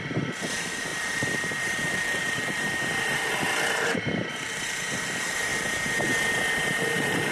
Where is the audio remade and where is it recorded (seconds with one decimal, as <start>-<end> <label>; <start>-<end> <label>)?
0.0-7.3 remade